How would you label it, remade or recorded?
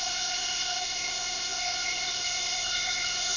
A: remade